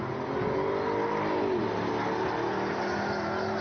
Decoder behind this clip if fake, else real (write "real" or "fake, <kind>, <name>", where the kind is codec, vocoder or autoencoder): real